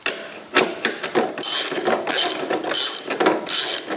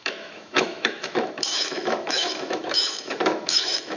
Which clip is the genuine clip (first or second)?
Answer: first